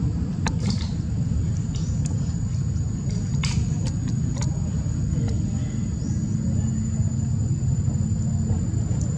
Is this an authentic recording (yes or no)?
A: yes